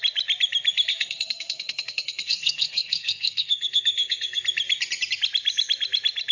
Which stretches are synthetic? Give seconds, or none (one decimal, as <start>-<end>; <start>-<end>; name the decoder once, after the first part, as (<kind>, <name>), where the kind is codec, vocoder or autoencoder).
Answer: 0.9-4.4 (codec, SNAC)